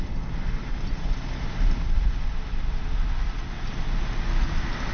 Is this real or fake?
real